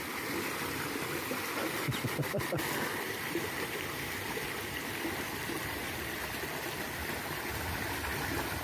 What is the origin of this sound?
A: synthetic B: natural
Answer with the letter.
A